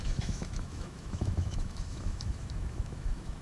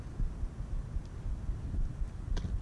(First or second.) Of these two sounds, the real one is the second